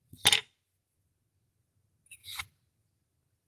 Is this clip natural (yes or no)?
yes